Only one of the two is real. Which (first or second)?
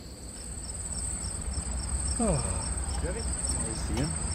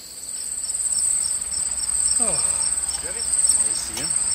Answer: second